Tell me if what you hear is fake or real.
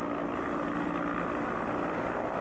real